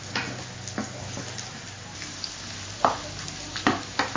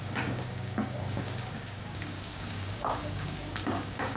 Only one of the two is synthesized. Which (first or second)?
second